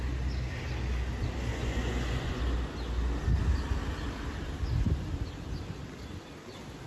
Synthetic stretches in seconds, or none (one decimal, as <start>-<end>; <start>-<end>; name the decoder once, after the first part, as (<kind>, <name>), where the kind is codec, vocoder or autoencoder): 1.5-2.4 (vocoder, Vocos)